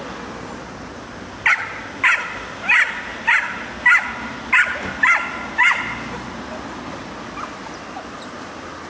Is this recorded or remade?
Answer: recorded